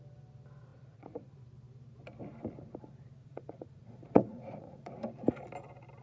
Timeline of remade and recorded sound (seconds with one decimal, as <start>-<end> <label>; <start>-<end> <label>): 0.0-0.7 recorded; 0.7-1.4 remade; 1.4-3.2 recorded; 3.2-4.9 remade; 4.9-6.0 recorded